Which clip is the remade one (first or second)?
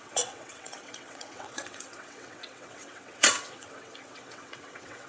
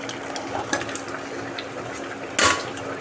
first